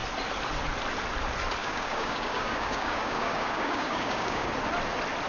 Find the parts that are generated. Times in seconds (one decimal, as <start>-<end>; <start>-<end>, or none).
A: 1.6-4.5